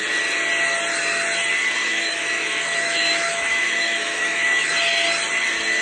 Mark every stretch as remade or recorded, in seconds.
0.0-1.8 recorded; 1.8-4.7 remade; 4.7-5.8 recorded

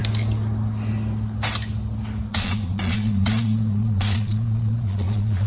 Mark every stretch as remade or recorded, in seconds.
0.0-2.3 recorded; 2.3-5.5 remade

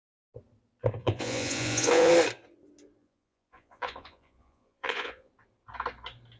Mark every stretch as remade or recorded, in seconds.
0.0-1.0 recorded; 1.0-2.1 remade; 2.1-3.0 recorded; 3.0-5.3 remade; 5.3-6.4 recorded

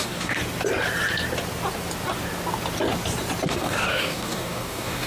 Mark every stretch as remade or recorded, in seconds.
0.0-0.4 remade; 0.4-3.5 recorded; 3.5-5.1 remade

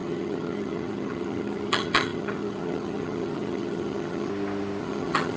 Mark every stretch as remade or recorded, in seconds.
0.0-4.3 remade; 4.3-4.8 recorded; 4.8-5.4 remade

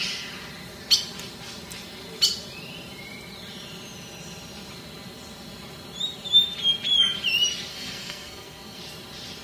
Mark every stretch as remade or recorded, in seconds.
0.0-7.7 recorded; 7.7-8.8 remade; 8.8-9.4 recorded

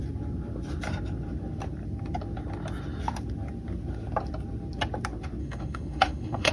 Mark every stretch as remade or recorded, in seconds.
0.0-5.4 recorded; 5.4-6.5 remade

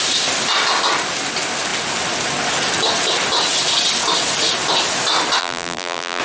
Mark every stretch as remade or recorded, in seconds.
0.0-5.4 recorded; 5.4-6.2 remade